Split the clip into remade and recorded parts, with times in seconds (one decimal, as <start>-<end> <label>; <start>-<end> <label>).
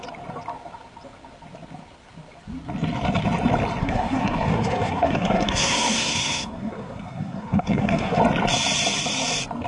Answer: 0.0-3.8 recorded; 3.8-8.2 remade; 8.2-9.7 recorded